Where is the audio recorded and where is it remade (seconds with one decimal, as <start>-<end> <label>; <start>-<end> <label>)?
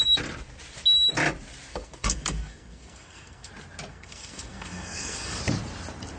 0.0-1.7 recorded; 1.7-3.5 remade; 3.5-3.9 recorded; 3.9-5.4 remade; 5.4-6.2 recorded